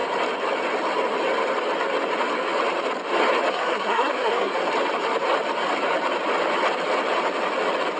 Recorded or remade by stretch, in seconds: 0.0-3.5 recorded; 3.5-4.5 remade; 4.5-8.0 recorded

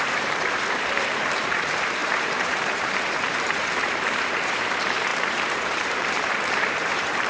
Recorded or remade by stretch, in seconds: 0.0-7.3 remade

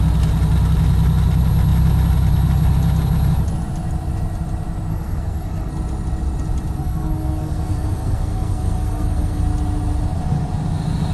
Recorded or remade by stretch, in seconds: 0.0-4.9 recorded; 4.9-5.7 remade; 5.7-6.8 recorded; 6.8-9.4 remade; 9.4-11.1 recorded

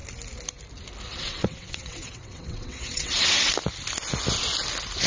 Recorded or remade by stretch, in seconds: 0.0-1.1 recorded; 1.1-3.5 remade; 3.5-5.1 recorded

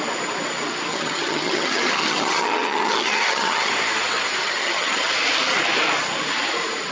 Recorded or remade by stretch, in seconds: 0.0-0.9 recorded; 0.9-3.7 remade; 3.7-4.4 recorded; 4.4-5.1 remade; 5.1-6.9 recorded